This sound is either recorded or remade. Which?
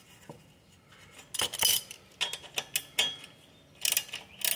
recorded